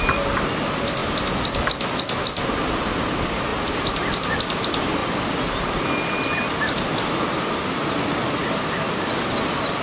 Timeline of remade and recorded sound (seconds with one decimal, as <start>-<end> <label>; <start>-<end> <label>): 0.0-9.8 recorded

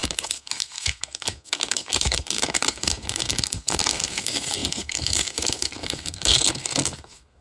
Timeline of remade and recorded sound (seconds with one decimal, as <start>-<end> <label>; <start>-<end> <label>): 0.0-7.4 remade